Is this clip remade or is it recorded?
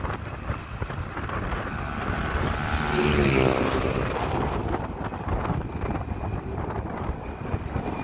recorded